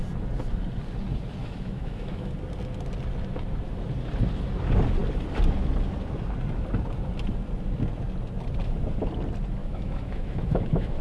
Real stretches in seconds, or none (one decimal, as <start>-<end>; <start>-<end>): 0.0-1.4; 2.3-9.6